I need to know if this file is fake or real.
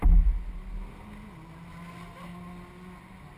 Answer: real